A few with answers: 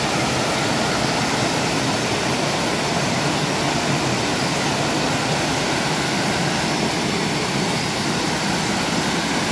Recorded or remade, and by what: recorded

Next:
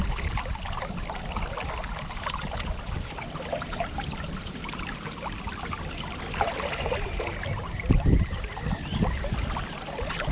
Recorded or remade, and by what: recorded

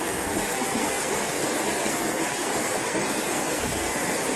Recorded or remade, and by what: remade, codec, SNAC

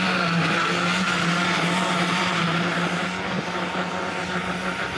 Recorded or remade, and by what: recorded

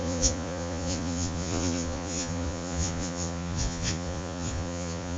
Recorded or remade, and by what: remade, vocoder, Vocos